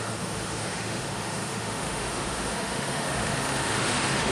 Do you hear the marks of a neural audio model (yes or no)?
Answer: yes